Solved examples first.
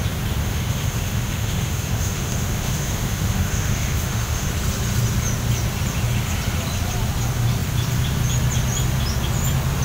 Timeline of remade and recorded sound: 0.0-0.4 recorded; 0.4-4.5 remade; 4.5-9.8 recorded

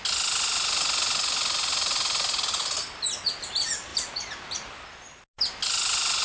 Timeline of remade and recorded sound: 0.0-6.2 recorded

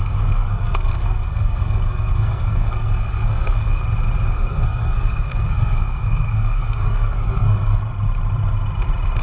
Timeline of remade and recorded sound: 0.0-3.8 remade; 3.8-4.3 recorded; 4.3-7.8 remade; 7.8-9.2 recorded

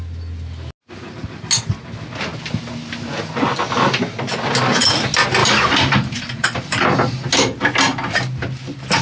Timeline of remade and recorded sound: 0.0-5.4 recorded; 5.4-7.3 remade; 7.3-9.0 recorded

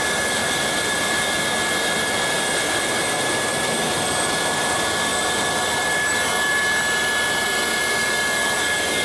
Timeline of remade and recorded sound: 0.0-9.0 recorded

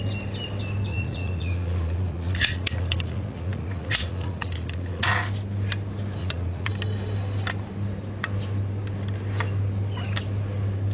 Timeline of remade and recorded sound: 0.0-0.9 recorded; 0.9-5.1 remade; 5.1-6.2 recorded; 6.2-6.7 remade; 6.7-10.9 recorded